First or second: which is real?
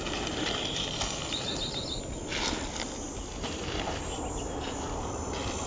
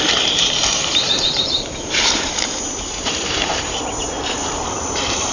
first